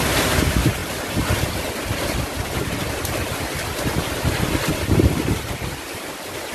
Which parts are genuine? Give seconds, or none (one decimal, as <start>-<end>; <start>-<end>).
0.0-6.5